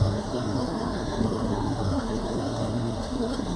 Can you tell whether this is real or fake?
fake